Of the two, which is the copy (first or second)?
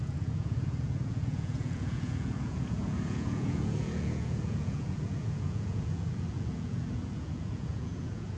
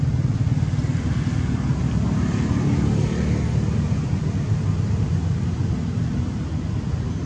first